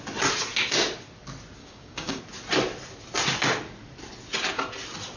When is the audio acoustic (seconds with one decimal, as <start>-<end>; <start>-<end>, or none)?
0.0-1.6; 2.2-5.2